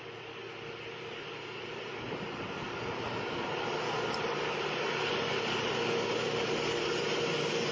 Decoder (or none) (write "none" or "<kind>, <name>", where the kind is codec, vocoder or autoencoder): none